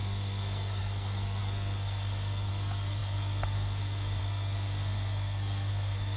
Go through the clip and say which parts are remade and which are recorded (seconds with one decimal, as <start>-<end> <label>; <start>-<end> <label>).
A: 0.0-6.2 remade